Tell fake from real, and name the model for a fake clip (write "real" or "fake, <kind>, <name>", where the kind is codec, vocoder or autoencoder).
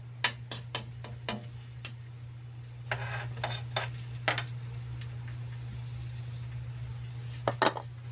real